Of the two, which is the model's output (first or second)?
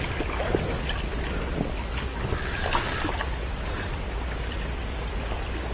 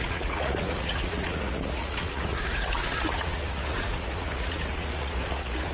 second